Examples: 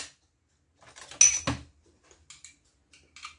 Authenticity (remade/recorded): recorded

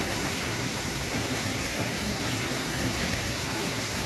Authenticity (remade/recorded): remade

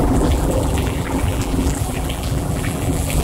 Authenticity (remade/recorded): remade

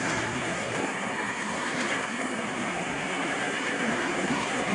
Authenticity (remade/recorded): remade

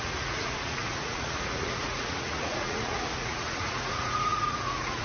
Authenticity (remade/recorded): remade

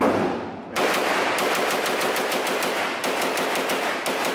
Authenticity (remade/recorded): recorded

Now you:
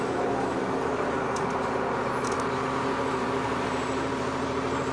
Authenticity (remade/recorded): remade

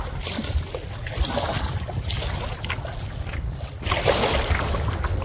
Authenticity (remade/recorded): recorded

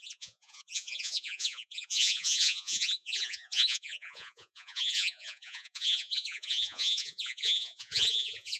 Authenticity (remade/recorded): remade